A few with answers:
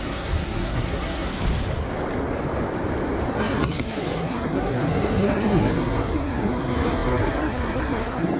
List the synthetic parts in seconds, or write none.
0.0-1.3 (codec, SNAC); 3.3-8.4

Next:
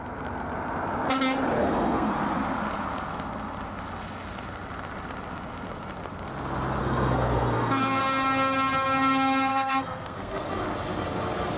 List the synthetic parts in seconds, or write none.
1.6-2.1 (codec, SNAC); 6.8-8.0; 9.5-10.5

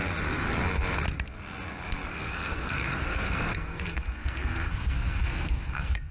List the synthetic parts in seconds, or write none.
2.1-6.1 (codec, SNAC)

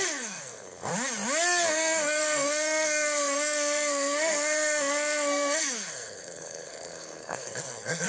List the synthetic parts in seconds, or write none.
0.0-0.9 (codec, SNAC); 1.7-8.1

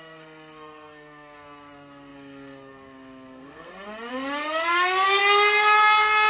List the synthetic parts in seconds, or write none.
0.0-5.2 (codec, SNAC)

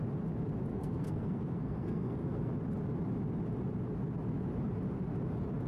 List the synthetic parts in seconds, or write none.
0.7-2.5 (codec, SNAC)